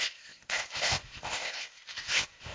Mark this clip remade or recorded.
remade